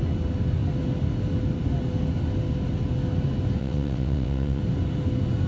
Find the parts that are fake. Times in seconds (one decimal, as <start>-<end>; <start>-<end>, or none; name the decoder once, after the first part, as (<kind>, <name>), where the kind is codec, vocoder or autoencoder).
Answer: 3.6-4.6 (vocoder, WaveNeXt)